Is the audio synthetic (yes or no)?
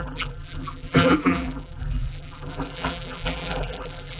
yes